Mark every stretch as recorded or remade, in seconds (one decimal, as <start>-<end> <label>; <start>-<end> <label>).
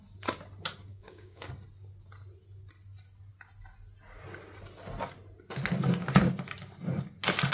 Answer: 0.0-0.9 recorded; 0.9-1.5 remade; 1.5-7.5 recorded